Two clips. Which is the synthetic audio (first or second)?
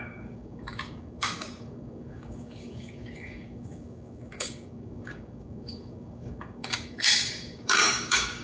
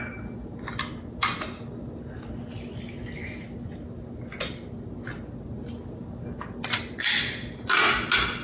first